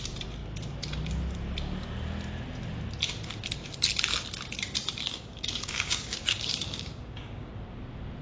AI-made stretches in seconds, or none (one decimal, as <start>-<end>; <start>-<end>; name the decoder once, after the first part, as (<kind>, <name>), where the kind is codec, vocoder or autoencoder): 4.8-7.5 (codec, DAC)